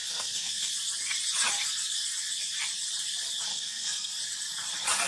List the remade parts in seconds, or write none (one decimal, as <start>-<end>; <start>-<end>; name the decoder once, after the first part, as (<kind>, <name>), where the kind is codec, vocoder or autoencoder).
0.0-0.7 (codec, SNAC); 3.5-4.1